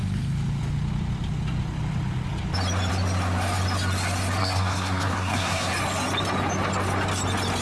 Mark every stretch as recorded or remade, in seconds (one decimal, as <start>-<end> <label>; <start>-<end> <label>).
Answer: 0.0-4.4 recorded; 4.4-5.7 remade; 5.7-7.6 recorded